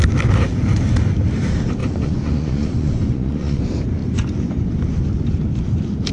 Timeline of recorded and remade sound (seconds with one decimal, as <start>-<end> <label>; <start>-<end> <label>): 0.0-1.8 recorded; 1.8-3.6 remade; 3.6-6.1 recorded